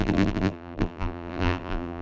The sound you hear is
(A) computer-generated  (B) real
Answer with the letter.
A